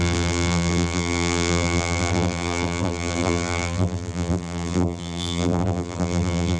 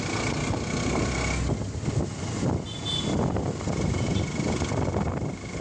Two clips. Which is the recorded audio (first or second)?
second